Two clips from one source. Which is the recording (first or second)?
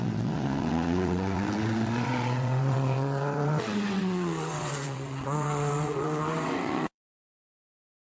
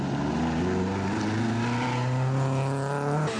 second